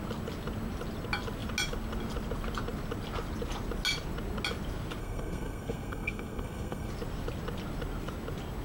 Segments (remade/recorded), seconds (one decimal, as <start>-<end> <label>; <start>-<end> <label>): 0.0-5.0 recorded; 5.0-6.9 remade; 6.9-8.6 recorded